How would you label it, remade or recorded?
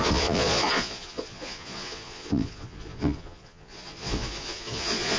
remade